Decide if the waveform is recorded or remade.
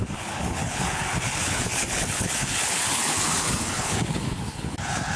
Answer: remade